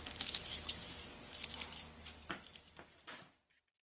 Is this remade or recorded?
recorded